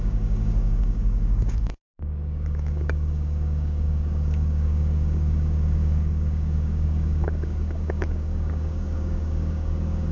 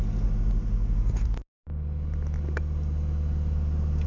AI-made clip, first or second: first